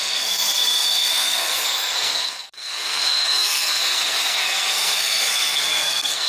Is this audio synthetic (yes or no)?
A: yes